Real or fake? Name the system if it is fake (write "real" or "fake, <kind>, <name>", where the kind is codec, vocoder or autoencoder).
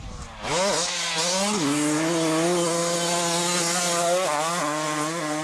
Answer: real